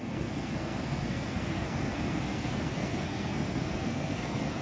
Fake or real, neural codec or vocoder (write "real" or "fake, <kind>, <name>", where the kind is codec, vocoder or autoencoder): fake, codec, SNAC